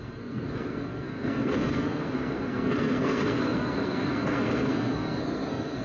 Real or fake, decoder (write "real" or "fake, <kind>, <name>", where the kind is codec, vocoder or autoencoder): fake, codec, SNAC